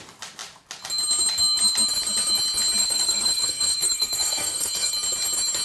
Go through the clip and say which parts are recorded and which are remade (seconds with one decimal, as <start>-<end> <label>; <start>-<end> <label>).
0.0-2.8 recorded; 2.8-4.9 remade; 4.9-5.6 recorded